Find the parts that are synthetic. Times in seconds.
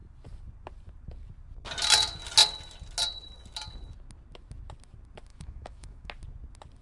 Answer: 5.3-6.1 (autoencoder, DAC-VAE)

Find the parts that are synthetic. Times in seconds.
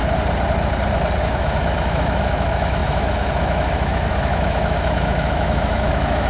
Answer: 1.2-6.3 (autoencoder, DAC-VAE)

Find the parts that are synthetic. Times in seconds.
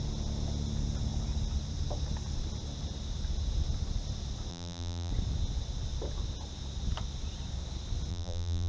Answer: 4.5-5.1 (vocoder, BigVGAN v2); 8.1-8.7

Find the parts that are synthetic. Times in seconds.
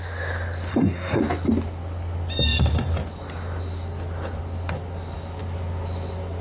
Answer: 0.7-1.2 (codec, SNAC)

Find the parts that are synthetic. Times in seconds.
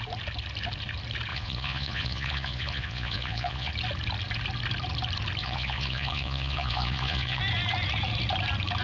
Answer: 1.3-3.7 (vocoder, Vocos); 5.4-7.4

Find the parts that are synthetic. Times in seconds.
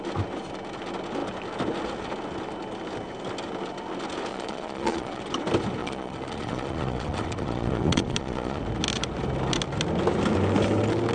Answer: 4.3-5.2 (vocoder, Vocos); 5.8-8.6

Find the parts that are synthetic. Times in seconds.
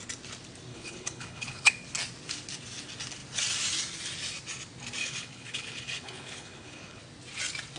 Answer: 0.7-1.7 (codec, HILCodec); 5.0-7.0